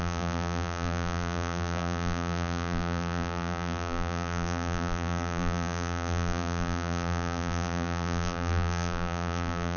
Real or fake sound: fake